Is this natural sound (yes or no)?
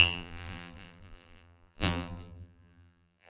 no